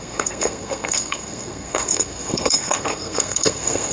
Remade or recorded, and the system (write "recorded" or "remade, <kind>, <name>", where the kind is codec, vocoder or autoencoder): remade, codec, SNAC